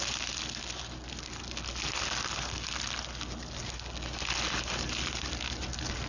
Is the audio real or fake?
real